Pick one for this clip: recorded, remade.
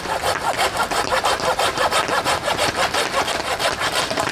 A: recorded